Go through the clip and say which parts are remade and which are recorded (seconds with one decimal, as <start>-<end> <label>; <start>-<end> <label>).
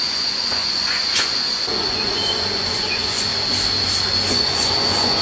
0.0-3.3 remade; 3.3-4.3 recorded; 4.3-5.2 remade